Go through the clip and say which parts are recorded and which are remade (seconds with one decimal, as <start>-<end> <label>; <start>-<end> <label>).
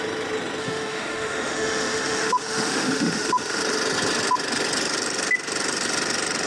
0.0-0.6 recorded; 0.6-3.6 remade; 3.6-6.5 recorded